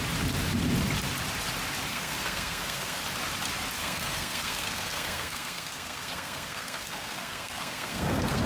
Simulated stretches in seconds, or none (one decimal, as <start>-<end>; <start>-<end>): 1.9-3.0; 3.8-8.5